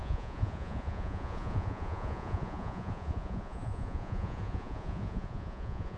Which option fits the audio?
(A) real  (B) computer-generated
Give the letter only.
B